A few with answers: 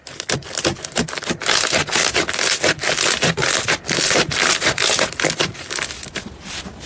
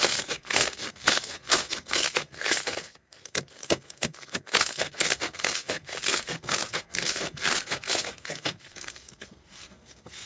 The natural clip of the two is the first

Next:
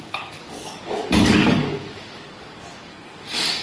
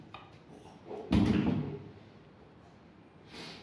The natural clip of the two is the second